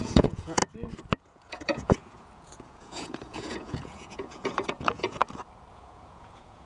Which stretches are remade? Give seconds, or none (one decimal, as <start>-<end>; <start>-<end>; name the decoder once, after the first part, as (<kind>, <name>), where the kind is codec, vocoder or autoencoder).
0.0-0.6 (vocoder, Vocos); 1.2-5.2; 5.7-6.7